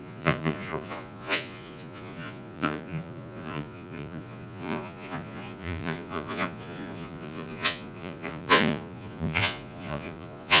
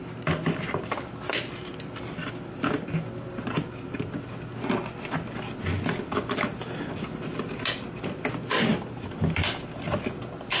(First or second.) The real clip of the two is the second